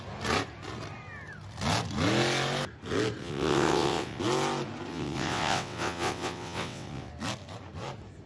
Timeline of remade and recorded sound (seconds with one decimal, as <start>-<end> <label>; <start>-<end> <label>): 0.0-3.2 recorded; 3.2-4.2 remade; 4.2-4.9 recorded; 4.9-7.1 remade; 7.1-8.3 recorded